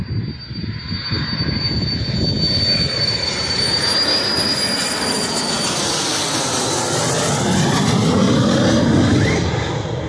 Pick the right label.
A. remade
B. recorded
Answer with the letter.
B